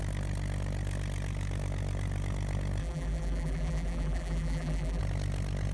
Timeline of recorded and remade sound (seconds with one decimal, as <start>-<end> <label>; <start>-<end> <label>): 0.0-2.8 recorded; 2.8-5.0 remade; 5.0-5.7 recorded

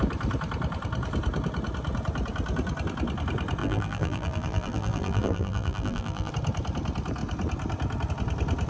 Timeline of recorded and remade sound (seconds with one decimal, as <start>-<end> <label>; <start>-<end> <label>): 0.0-3.6 recorded; 3.6-6.3 remade; 6.3-8.7 recorded

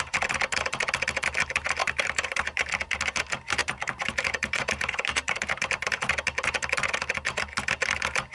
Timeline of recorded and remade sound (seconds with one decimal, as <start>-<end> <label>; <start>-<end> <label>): 0.0-1.8 recorded; 1.8-2.7 remade; 2.7-3.6 recorded; 3.6-6.0 remade; 6.0-8.3 recorded

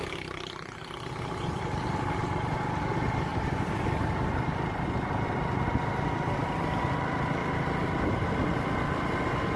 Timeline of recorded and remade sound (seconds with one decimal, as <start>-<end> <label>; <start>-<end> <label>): 0.0-3.3 remade; 3.3-6.1 recorded; 6.1-7.4 remade; 7.4-9.6 recorded

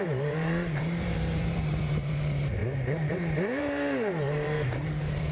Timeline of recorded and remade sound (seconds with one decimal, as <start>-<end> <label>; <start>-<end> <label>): 0.0-5.3 remade

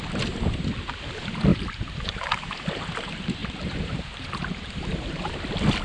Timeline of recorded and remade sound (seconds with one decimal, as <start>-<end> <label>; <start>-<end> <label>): 0.0-1.5 recorded; 1.5-2.2 remade; 2.2-3.4 recorded; 3.4-5.3 remade; 5.3-5.8 recorded

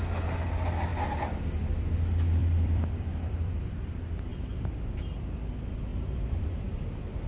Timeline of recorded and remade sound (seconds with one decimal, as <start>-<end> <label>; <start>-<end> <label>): 0.0-2.4 recorded; 2.4-3.9 remade; 3.9-4.3 recorded; 4.3-5.0 remade; 5.0-5.9 recorded; 5.9-6.6 remade; 6.6-7.3 recorded

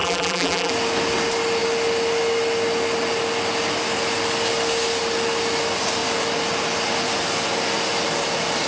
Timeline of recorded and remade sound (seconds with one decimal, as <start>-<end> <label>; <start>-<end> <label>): 0.0-0.7 remade; 0.7-8.7 recorded